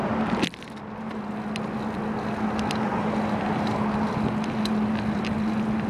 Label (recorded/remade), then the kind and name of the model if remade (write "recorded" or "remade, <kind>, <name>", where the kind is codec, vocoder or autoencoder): recorded